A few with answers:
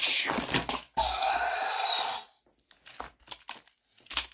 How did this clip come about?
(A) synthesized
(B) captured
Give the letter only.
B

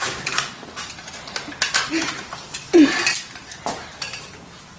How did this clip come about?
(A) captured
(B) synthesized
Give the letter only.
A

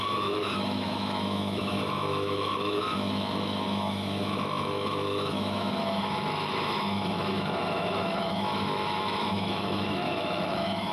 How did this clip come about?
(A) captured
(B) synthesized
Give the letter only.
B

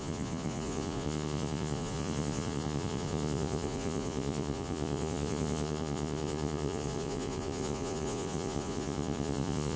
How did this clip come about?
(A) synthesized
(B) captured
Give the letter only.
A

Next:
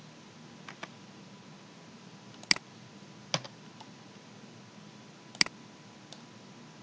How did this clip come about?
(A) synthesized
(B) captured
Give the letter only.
B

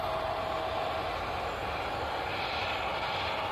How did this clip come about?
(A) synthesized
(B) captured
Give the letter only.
B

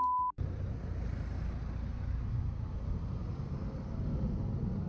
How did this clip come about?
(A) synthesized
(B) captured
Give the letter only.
B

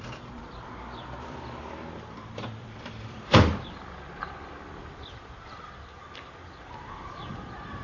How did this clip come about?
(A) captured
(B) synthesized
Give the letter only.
B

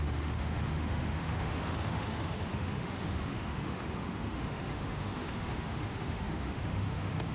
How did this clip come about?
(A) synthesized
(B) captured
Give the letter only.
A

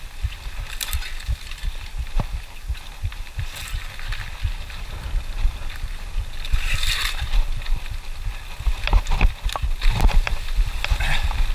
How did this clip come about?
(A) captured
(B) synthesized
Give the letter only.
A